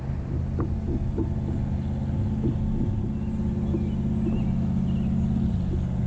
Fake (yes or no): no